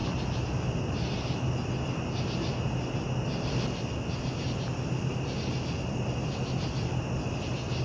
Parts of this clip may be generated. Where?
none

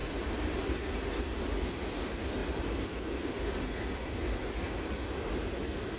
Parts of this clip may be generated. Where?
0.0-0.6 (vocoder, BigVGAN v2); 2.4-3.6

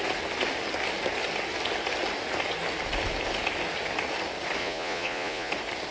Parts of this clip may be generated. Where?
4.6-5.5 (vocoder, Vocos)

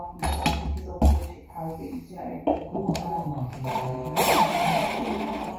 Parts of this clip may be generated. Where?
none

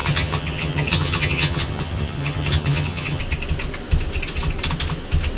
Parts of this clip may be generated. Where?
0.0-3.2 (vocoder, HiFi-GAN)

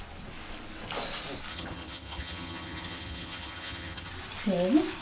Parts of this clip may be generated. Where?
1.5-4.1 (vocoder, HiFi-GAN)